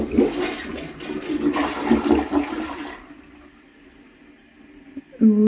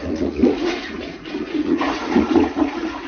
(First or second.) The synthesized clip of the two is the second